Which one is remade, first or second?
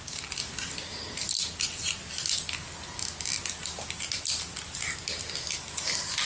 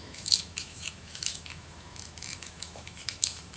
second